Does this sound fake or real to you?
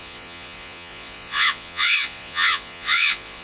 fake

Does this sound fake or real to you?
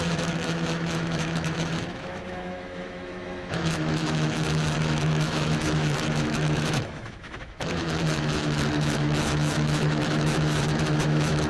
fake